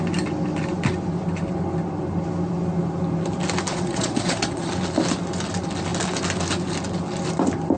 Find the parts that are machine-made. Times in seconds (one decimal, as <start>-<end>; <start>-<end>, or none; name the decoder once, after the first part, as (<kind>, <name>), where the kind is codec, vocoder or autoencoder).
3.7-4.7 (vocoder, Vocos)